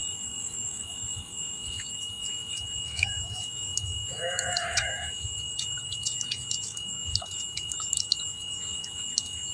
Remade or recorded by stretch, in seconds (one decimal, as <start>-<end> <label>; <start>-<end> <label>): 0.0-9.5 remade